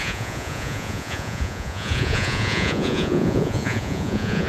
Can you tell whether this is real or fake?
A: fake